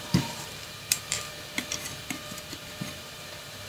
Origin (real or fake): fake